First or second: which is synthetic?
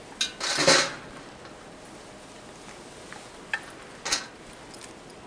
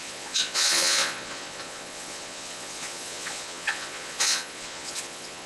second